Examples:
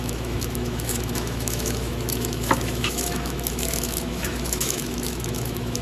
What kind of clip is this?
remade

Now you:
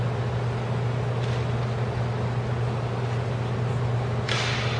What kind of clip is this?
recorded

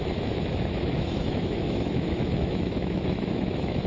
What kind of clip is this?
remade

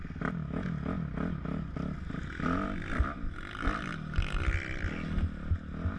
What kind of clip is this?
recorded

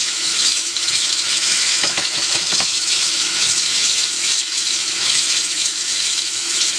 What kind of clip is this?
remade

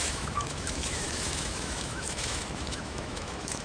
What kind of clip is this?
remade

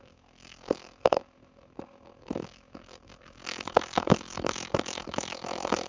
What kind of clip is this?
remade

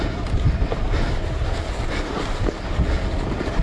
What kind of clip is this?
recorded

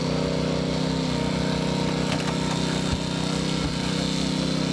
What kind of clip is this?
recorded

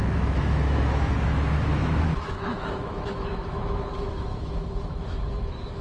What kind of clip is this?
remade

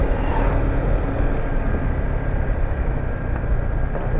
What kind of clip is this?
recorded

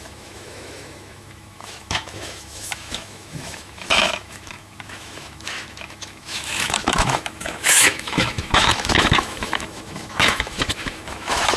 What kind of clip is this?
remade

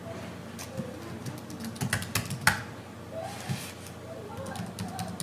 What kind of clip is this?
recorded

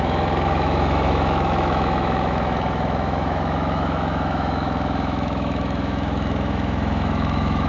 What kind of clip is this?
remade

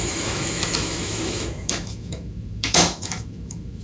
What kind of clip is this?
remade